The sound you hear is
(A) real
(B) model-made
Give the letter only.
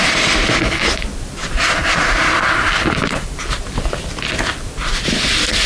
A